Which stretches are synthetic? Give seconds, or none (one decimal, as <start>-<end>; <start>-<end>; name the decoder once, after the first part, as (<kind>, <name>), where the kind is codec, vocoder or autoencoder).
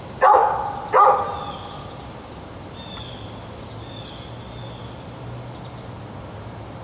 none